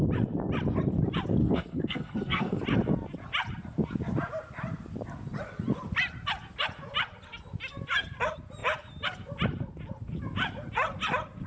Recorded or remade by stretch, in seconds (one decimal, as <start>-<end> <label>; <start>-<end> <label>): 0.0-1.4 recorded; 1.4-2.6 remade; 2.6-11.5 recorded